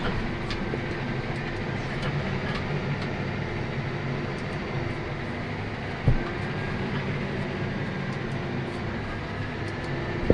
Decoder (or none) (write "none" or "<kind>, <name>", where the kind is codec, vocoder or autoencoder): none